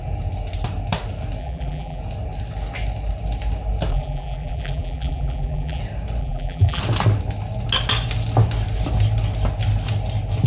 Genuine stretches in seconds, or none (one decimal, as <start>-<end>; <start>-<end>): 0.0-1.4; 2.0-3.9; 5.8-6.2; 6.8-10.5